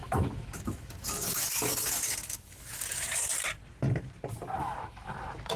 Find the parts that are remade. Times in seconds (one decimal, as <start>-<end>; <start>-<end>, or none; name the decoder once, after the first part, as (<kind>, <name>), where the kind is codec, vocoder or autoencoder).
0.0-3.2 (autoencoder, DAC-VAE); 4.6-5.6